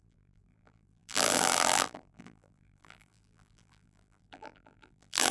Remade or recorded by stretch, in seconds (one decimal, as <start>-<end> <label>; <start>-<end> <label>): 0.0-5.3 remade

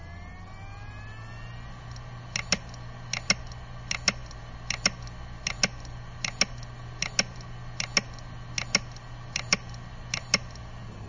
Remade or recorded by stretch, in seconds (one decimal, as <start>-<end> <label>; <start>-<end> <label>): 0.0-11.1 recorded

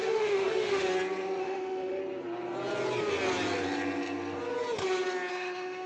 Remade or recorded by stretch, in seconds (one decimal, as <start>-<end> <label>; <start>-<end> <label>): 0.0-0.9 remade; 0.9-1.4 recorded; 1.4-2.0 remade; 2.0-5.3 recorded; 5.3-5.9 remade

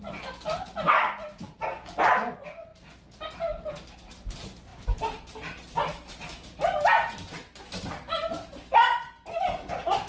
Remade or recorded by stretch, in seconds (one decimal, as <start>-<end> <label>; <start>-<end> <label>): 0.0-4.7 recorded; 4.7-9.7 remade; 9.7-10.1 recorded

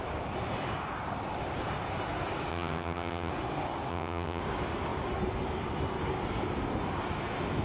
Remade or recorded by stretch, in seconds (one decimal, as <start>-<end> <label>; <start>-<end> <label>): 0.0-2.5 recorded; 2.5-3.3 remade; 3.3-3.9 recorded; 3.9-4.4 remade; 4.4-7.6 recorded

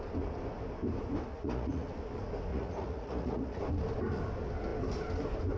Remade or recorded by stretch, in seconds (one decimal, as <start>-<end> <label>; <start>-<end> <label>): 0.0-1.3 recorded; 1.3-2.0 remade; 2.0-2.5 recorded; 2.5-3.6 remade; 3.6-5.6 recorded

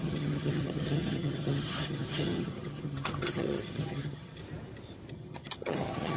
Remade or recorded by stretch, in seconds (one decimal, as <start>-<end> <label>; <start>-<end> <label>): 0.0-4.4 remade; 4.4-5.1 recorded; 5.1-6.2 remade